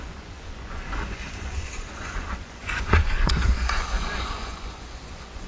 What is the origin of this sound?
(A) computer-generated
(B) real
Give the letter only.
A